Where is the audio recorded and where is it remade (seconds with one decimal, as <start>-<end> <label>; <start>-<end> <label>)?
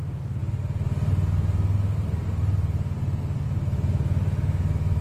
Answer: 0.0-0.4 remade; 0.4-3.4 recorded; 3.4-5.0 remade